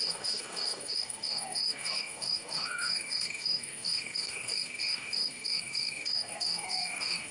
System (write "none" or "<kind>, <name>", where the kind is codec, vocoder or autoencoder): codec, DAC